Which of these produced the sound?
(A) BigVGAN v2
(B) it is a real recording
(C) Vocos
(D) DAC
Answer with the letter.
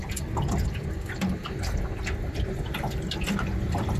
B